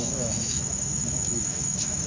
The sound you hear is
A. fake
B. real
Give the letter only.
A